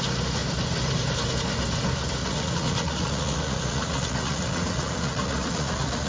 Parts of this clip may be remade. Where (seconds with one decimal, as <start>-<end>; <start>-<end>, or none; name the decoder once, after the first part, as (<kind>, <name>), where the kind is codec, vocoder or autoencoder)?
2.2-6.1 (vocoder, Vocos)